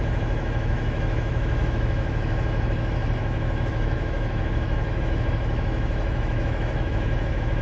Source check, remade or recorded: remade